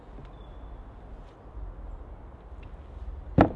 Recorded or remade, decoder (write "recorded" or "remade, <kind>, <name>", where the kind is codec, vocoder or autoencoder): recorded